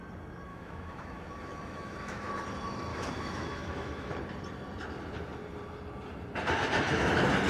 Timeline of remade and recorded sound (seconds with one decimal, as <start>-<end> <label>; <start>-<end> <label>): 0.0-0.5 recorded; 0.5-2.3 remade; 2.3-2.9 recorded; 2.9-4.1 remade; 4.1-7.5 recorded